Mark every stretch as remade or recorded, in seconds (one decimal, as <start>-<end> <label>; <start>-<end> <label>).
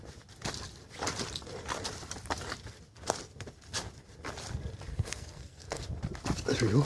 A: 0.0-4.9 recorded; 4.9-5.8 remade; 5.8-6.8 recorded